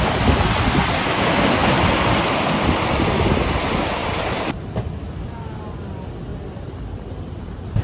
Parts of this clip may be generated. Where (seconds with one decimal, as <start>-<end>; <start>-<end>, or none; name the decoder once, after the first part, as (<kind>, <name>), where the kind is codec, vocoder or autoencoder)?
6.3-7.8 (vocoder, BigVGAN v2)